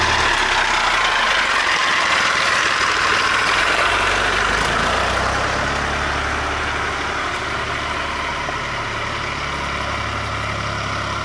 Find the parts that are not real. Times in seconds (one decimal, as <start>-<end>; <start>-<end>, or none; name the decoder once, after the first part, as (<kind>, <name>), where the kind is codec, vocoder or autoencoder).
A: 1.8-5.6 (vocoder, BigVGAN v2)